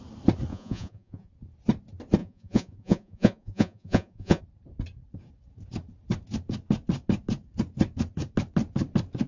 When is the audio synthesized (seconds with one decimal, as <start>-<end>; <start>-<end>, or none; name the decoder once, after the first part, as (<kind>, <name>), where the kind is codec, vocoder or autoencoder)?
0.5-1.3 (vocoder, Vocos); 2.2-4.4